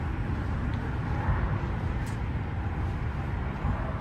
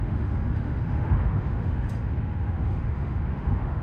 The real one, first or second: first